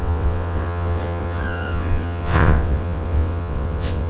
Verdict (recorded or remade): remade